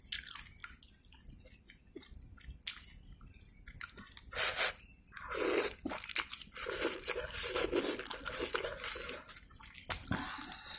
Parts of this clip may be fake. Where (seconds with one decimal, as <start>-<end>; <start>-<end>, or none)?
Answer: none